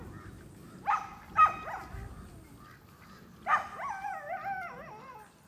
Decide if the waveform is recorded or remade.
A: recorded